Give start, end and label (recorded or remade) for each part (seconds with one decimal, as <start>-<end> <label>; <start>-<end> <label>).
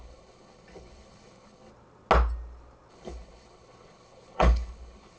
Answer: 0.0-1.7 remade; 1.7-2.9 recorded; 2.9-5.2 remade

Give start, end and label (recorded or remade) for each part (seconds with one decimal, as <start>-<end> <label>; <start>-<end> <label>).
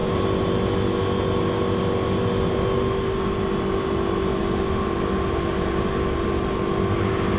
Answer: 0.0-7.4 recorded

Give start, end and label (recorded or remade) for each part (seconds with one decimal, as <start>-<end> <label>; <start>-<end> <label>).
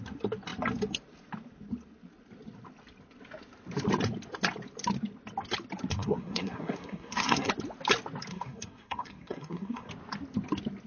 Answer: 0.0-5.9 recorded; 5.9-7.5 remade; 7.5-8.3 recorded; 8.3-9.9 remade; 9.9-10.9 recorded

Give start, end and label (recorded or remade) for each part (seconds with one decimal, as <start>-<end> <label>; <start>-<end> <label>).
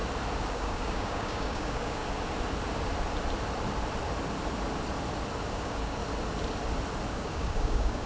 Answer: 0.0-0.5 recorded; 0.5-2.0 remade; 2.0-5.5 recorded; 5.5-6.0 remade; 6.0-7.1 recorded; 7.1-8.1 remade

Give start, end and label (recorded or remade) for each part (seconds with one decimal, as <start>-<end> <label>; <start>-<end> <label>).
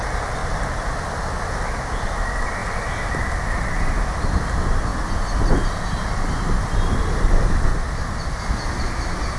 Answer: 0.0-9.4 recorded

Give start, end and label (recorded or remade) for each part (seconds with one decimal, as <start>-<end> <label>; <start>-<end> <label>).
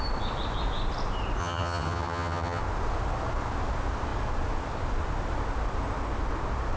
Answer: 0.0-1.4 recorded; 1.4-2.6 remade; 2.6-6.8 recorded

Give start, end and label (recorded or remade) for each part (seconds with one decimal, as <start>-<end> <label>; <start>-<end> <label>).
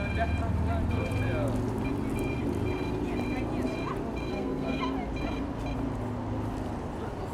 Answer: 0.0-4.3 recorded; 4.3-4.8 remade; 4.8-7.3 recorded